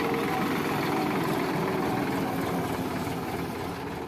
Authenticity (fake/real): real